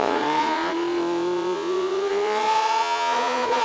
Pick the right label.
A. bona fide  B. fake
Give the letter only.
B